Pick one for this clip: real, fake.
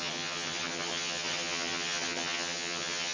fake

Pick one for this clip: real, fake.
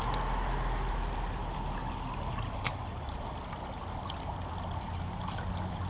real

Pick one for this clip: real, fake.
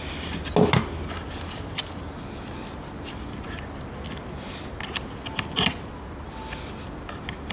real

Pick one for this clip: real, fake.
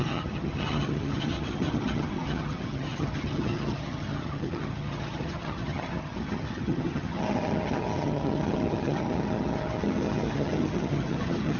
fake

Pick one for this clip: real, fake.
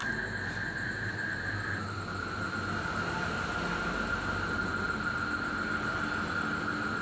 real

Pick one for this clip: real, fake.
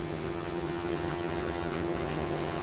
fake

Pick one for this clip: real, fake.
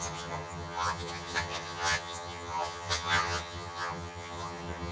fake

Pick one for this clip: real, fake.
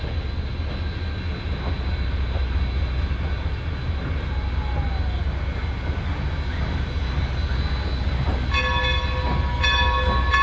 real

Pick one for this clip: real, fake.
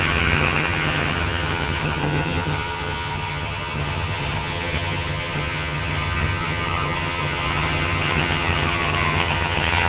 fake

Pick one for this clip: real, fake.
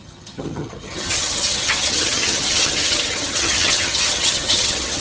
fake